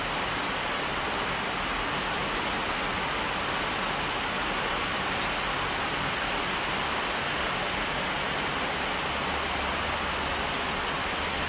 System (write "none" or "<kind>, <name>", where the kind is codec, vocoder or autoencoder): none